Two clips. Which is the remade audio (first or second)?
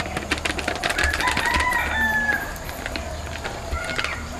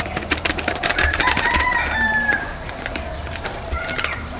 second